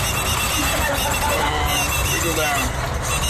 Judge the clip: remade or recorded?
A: recorded